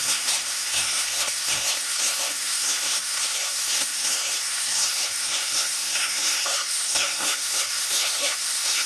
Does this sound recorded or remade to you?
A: remade